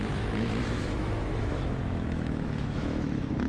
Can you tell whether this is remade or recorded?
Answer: remade